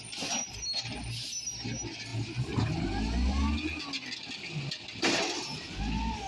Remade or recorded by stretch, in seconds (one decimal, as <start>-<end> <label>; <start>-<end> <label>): 0.0-6.3 recorded